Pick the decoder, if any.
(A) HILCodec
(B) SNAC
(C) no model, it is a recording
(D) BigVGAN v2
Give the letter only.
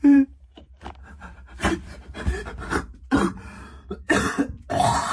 D